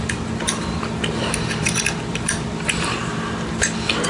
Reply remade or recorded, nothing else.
recorded